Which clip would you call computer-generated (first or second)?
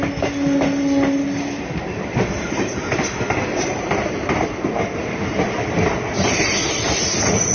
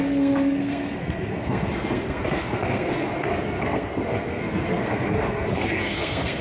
second